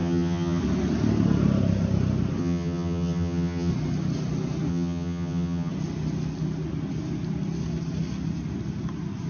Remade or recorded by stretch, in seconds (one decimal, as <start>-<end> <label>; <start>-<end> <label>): 0.0-0.6 remade; 0.6-2.4 recorded; 2.4-3.7 remade; 3.7-4.7 recorded; 4.7-5.7 remade; 5.7-9.3 recorded